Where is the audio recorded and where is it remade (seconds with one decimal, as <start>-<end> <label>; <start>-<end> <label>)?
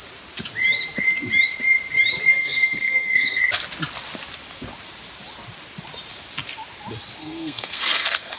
0.0-2.3 recorded; 2.3-3.4 remade; 3.4-7.2 recorded; 7.2-8.4 remade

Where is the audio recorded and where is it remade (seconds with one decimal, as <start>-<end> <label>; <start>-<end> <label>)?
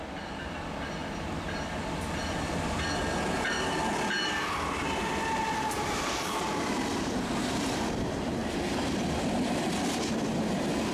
0.0-10.9 recorded